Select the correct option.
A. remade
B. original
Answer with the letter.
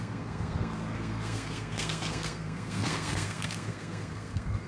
A